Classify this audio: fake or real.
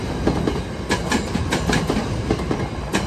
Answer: real